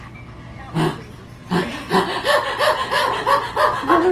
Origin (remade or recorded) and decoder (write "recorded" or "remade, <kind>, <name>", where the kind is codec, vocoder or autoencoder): recorded